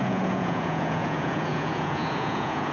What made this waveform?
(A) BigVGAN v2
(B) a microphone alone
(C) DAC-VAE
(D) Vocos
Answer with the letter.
D